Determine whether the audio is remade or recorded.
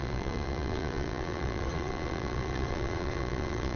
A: remade